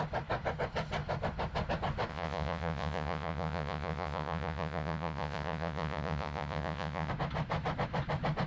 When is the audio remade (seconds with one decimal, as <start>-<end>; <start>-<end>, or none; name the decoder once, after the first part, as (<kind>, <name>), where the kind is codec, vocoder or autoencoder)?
2.1-7.1 (vocoder, Vocos)